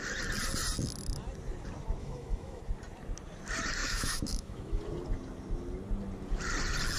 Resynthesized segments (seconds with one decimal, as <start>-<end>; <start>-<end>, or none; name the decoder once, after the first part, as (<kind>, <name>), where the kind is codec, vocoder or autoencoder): 2.0-2.6 (autoencoder, DAC-VAE); 3.8-4.8